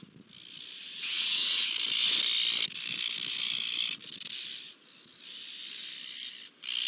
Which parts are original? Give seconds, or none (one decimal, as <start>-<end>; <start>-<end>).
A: 0.0-0.8; 1.7-6.9